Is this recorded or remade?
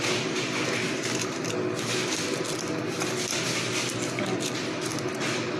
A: remade